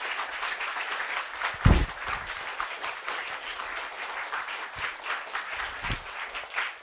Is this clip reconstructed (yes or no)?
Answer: no